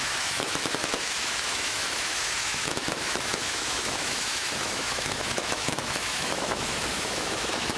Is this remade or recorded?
remade